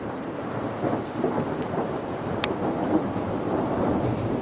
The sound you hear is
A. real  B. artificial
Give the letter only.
B